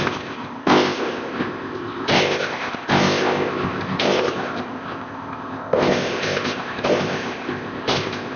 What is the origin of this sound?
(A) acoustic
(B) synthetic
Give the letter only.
B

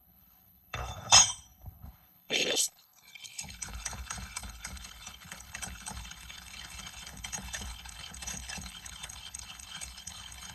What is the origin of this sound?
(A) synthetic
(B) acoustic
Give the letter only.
A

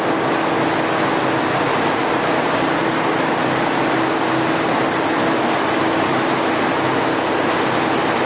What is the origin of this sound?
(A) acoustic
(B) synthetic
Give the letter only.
A